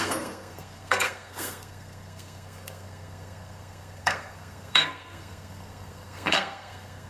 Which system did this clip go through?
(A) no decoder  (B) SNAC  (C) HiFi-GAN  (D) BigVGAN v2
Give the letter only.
B